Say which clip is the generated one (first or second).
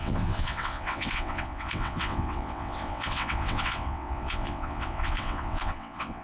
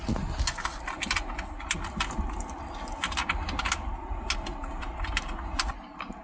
first